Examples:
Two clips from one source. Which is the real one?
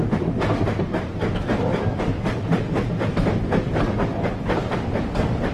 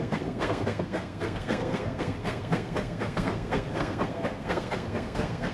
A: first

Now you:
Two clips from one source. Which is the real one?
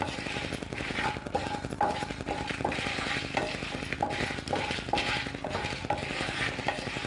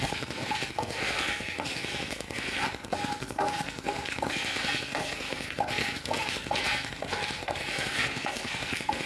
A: first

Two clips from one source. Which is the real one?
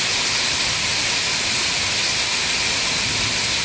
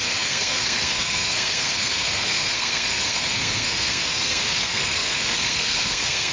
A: first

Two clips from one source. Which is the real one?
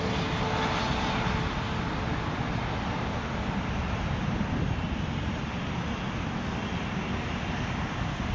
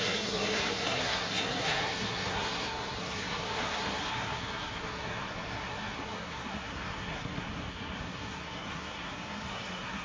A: first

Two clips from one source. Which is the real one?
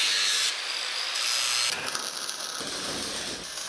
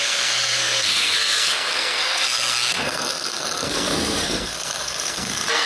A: first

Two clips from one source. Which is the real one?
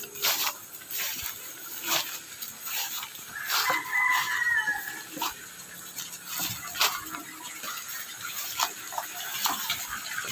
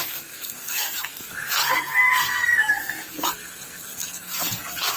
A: first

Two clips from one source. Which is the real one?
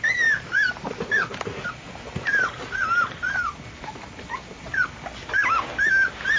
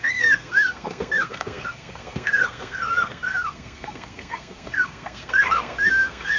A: first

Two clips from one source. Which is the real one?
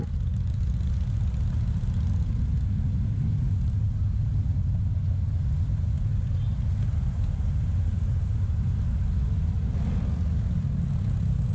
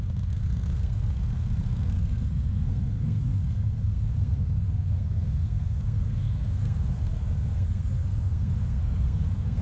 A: first